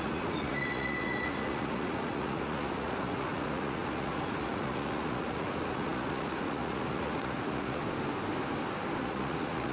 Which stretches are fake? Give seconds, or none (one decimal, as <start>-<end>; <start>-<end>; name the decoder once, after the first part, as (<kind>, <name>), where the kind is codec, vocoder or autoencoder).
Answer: 0.0-7.8 (vocoder, Vocos); 9.0-9.7